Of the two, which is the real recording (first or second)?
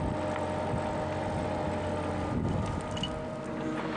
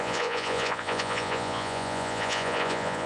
first